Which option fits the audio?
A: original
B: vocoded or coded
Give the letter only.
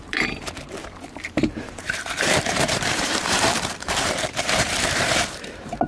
B